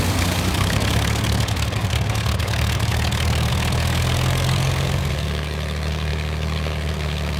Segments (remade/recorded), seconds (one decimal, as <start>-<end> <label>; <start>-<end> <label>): 0.0-7.4 remade

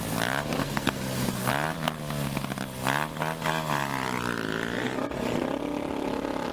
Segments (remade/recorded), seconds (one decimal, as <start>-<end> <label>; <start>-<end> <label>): 0.0-0.6 recorded; 0.6-1.5 remade; 1.5-6.5 recorded